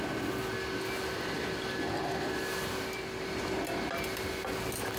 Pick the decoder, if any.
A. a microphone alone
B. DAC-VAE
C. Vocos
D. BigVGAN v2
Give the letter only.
A